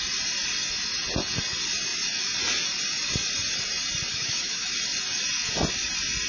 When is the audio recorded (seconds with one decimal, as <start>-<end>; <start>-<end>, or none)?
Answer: 0.0-4.1; 4.8-6.3